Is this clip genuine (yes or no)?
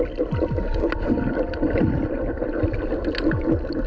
yes